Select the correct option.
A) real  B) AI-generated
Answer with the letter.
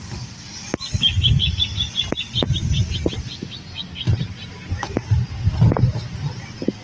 A